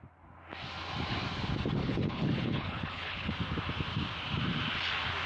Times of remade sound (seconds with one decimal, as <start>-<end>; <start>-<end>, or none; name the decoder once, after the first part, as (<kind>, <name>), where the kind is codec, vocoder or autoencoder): 1.8-3.3 (codec, HILCodec)